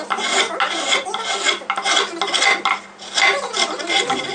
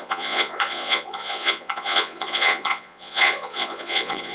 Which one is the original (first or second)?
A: first